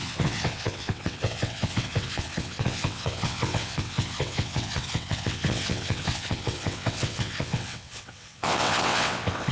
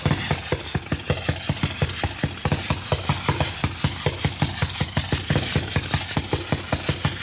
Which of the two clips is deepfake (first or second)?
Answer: first